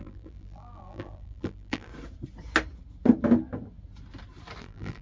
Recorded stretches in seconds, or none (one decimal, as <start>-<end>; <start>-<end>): 1.9-4.6